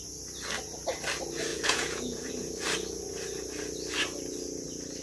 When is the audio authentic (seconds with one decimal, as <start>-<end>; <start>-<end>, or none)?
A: 0.0-1.5; 2.3-5.0